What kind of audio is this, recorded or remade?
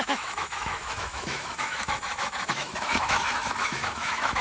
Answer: remade